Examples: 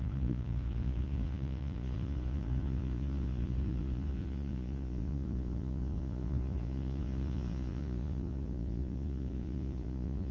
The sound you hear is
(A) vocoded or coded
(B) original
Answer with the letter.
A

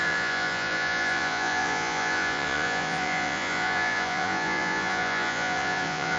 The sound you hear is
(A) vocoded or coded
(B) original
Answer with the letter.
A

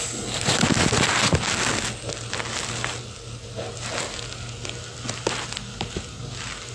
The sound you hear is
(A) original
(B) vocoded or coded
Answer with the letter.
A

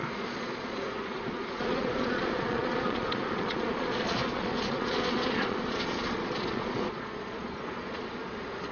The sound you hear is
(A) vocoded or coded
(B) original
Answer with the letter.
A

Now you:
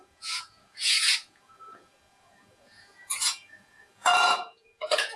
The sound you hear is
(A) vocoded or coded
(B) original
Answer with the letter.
A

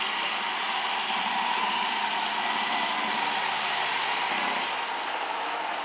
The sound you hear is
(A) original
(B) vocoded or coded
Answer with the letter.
A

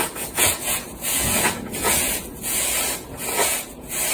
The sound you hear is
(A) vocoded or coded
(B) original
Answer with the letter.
A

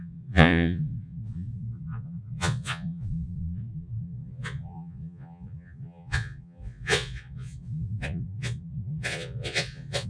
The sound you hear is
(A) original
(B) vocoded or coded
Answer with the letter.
B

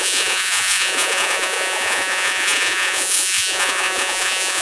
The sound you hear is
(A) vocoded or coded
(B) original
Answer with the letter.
A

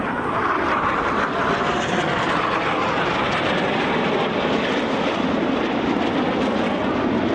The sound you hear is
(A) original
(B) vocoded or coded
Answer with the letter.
A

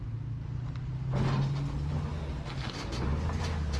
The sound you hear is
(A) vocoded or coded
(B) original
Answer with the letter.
B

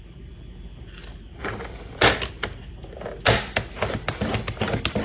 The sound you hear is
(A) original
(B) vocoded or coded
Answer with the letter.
A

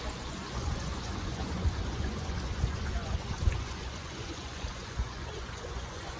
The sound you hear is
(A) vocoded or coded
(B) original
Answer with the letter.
A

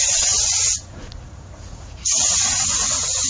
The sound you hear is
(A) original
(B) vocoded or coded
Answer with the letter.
B